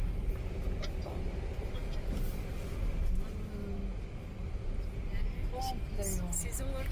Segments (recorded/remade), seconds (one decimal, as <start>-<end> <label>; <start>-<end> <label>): 0.0-6.9 recorded